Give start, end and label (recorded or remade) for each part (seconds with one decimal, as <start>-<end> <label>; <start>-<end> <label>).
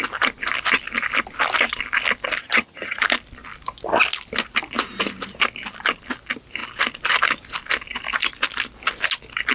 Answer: 0.0-2.4 recorded; 2.4-3.0 remade; 3.0-9.5 recorded